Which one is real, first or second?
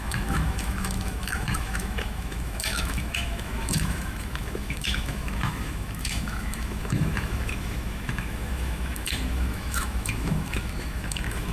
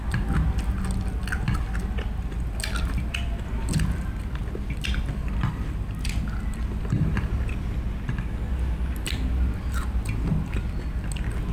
second